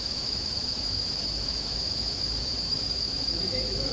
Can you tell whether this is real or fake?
fake